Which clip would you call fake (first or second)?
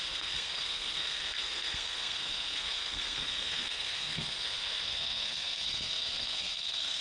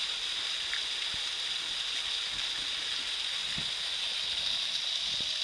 first